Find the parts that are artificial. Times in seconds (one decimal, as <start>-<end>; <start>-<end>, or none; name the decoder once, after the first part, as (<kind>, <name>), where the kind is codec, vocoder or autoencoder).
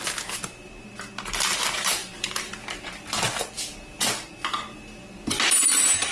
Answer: none